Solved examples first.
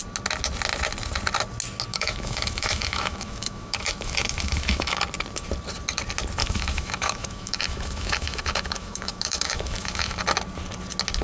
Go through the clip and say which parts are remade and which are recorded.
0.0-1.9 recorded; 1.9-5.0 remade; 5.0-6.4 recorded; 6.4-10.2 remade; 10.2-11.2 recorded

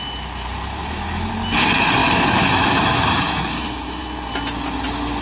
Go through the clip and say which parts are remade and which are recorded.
0.0-0.8 recorded; 0.8-1.3 remade; 1.3-2.0 recorded; 2.0-4.0 remade; 4.0-5.2 recorded